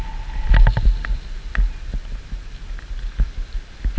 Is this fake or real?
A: real